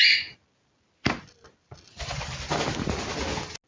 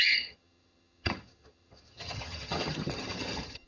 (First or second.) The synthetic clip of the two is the second